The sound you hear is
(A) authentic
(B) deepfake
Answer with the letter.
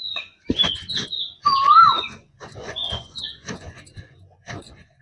B